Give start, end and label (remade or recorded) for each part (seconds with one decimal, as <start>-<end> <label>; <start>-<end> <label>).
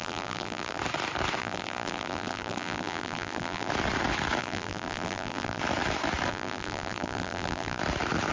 0.0-0.8 remade; 0.8-1.4 recorded; 1.4-3.7 remade; 3.7-4.4 recorded; 4.4-5.6 remade; 5.6-6.3 recorded; 6.3-7.8 remade; 7.8-8.3 recorded